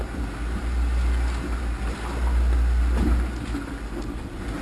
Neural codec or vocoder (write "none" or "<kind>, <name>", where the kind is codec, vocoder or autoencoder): none